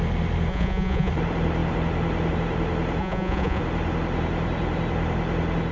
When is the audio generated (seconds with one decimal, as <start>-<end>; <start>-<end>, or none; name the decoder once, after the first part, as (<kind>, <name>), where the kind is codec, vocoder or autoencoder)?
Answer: 0.5-1.1 (vocoder, Vocos); 3.0-3.6